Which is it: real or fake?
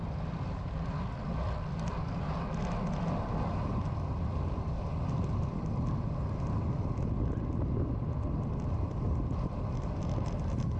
real